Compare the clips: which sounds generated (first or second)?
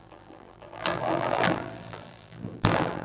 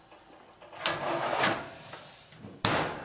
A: first